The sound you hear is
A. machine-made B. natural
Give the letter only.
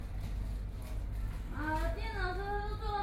B